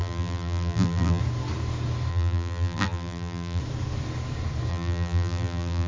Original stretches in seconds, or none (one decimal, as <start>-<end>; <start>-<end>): 1.2-2.1; 3.6-4.7